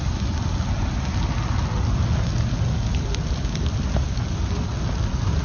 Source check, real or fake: real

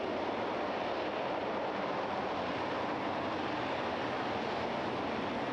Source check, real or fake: real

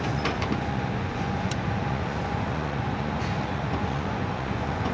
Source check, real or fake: fake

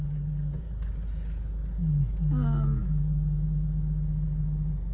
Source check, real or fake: real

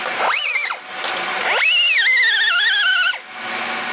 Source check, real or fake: real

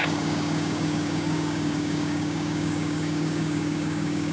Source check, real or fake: fake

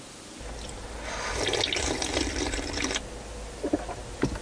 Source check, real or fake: real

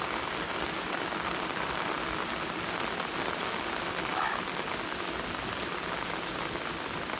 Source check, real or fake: real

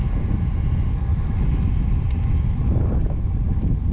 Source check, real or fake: real